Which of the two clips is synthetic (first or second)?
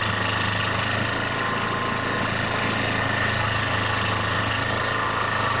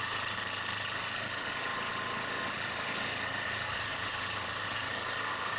second